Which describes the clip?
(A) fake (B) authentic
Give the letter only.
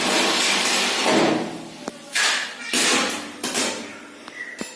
A